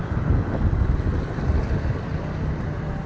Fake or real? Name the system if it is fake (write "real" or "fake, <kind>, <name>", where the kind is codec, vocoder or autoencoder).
real